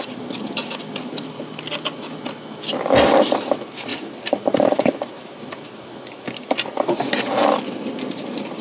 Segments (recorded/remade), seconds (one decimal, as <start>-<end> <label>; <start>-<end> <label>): 0.0-3.9 recorded; 3.9-6.2 remade; 6.2-8.6 recorded